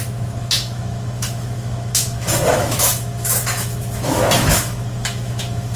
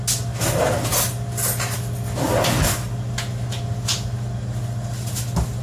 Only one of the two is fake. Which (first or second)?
first